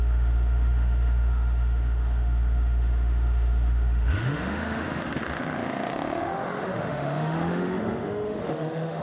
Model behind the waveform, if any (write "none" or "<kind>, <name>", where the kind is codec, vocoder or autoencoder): autoencoder, DAC-VAE